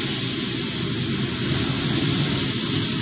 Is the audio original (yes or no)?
yes